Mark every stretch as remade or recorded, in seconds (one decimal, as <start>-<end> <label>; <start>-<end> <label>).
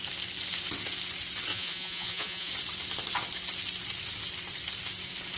0.0-1.5 recorded; 1.5-2.5 remade; 2.5-5.4 recorded